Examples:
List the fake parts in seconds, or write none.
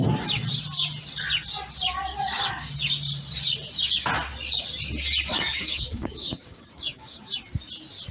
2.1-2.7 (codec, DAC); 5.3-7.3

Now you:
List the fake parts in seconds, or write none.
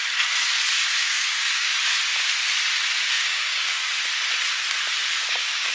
1.0-1.7 (codec, DAC); 3.1-3.8; 5.3-5.7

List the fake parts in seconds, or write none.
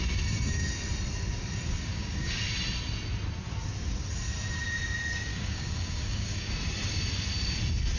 1.9-2.4 (codec, DAC); 5.3-6.5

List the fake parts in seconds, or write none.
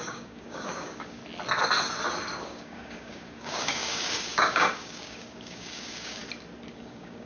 0.0-1.2 (codec, DAC); 2.4-6.2; 6.7-7.3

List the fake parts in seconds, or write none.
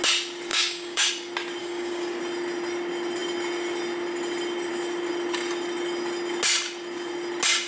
0.5-1.1 (codec, DAC); 1.6-2.2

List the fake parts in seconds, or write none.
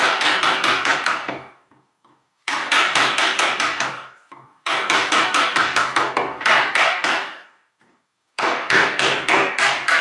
0.0-10.0 (codec, DAC)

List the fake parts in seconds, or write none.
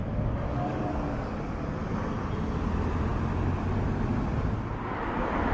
0.0-1.6 (codec, DAC)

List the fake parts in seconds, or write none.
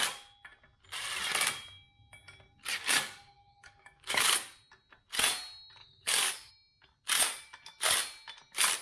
2.7-4.3 (codec, DAC); 5.8-6.5